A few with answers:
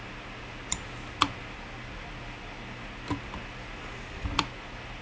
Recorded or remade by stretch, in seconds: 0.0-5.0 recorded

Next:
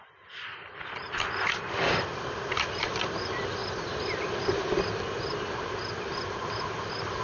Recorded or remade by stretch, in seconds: 0.0-7.2 recorded

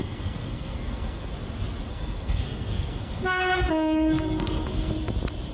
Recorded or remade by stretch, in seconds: 0.0-1.3 remade; 1.3-1.9 recorded; 1.9-4.9 remade; 4.9-5.5 recorded

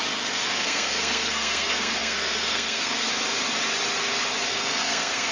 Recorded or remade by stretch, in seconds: 0.0-0.4 recorded; 0.4-3.1 remade; 3.1-4.5 recorded; 4.5-5.3 remade

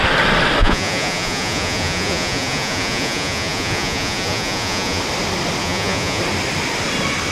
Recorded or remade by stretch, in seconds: 0.0-0.6 recorded; 0.6-5.0 remade; 5.0-5.6 recorded; 5.6-6.2 remade; 6.2-7.3 recorded

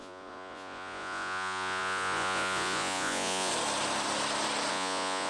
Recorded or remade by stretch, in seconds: 0.0-3.5 remade; 3.5-4.7 recorded; 4.7-5.3 remade

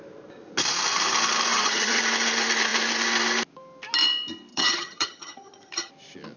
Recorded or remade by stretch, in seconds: 0.0-1.5 recorded; 1.5-2.0 remade; 2.0-4.5 recorded; 4.5-5.9 remade; 5.9-6.4 recorded